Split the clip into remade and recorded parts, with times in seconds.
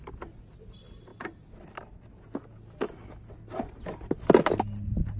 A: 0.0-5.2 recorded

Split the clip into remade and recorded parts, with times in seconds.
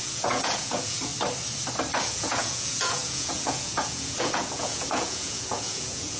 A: 0.0-1.1 remade; 1.1-2.0 recorded; 2.0-6.2 remade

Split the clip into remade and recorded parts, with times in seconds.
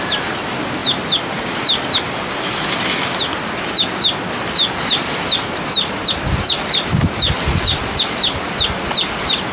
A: 0.0-9.5 recorded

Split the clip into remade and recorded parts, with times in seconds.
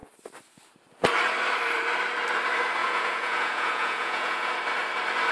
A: 0.0-2.8 recorded; 2.8-4.5 remade; 4.5-5.3 recorded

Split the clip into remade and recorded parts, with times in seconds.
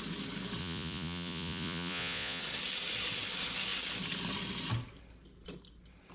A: 0.0-0.6 recorded; 0.6-2.4 remade; 2.4-6.1 recorded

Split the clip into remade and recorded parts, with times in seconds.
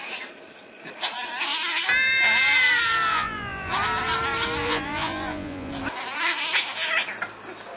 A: 0.0-3.1 recorded; 3.1-3.7 remade; 3.7-4.6 recorded; 4.6-5.7 remade; 5.7-7.8 recorded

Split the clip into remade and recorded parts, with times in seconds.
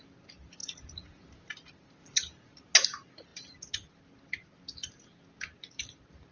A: 0.0-0.6 recorded; 0.6-1.2 remade; 1.2-2.0 recorded; 2.0-2.6 remade; 2.6-6.3 recorded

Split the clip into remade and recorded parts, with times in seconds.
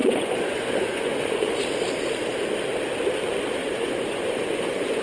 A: 0.0-1.6 remade; 1.6-3.6 recorded; 3.6-5.0 remade